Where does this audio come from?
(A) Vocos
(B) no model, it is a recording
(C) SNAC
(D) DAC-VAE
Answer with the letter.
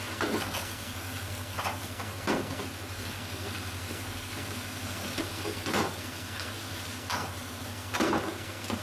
C